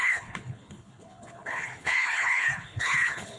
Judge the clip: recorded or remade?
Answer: remade